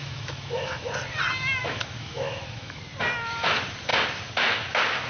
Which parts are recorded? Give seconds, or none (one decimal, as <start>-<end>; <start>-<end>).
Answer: 0.9-1.6; 2.8-5.1